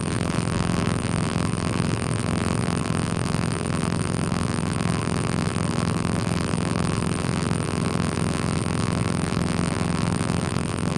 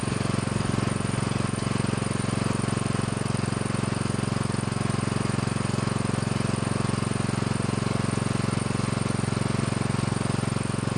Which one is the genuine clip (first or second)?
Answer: second